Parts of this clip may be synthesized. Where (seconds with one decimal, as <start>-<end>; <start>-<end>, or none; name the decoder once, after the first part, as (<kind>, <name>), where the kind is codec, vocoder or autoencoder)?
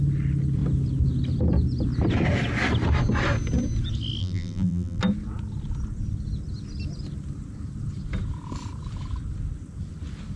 4.2-5.0 (vocoder, BigVGAN v2)